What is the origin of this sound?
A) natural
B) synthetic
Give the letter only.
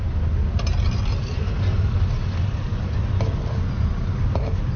A